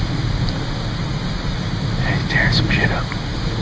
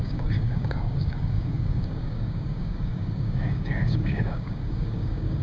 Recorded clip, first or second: first